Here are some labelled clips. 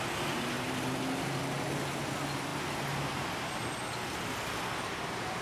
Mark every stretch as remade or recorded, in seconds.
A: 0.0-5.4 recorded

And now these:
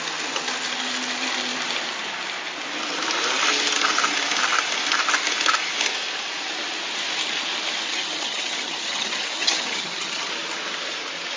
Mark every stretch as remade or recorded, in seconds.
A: 0.0-7.9 recorded; 7.9-10.3 remade; 10.3-11.4 recorded

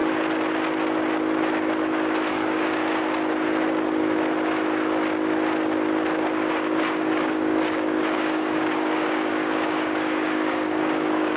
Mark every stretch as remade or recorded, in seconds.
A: 0.0-2.3 recorded; 2.3-2.8 remade; 2.8-6.5 recorded; 6.5-11.4 remade

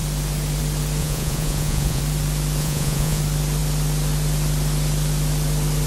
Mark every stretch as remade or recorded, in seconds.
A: 0.0-1.0 recorded; 1.0-2.0 remade; 2.0-2.6 recorded; 2.6-3.2 remade; 3.2-5.9 recorded